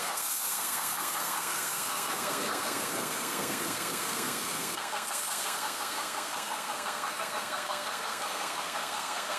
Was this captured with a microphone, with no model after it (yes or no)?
no